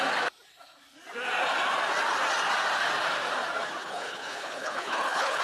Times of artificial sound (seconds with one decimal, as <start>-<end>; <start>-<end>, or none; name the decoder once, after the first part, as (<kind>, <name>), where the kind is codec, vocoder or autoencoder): 3.8-5.4 (codec, HILCodec)